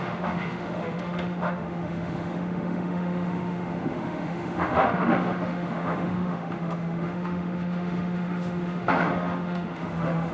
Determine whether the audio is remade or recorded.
remade